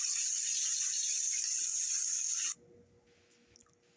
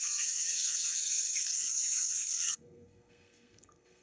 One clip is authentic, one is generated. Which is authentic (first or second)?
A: first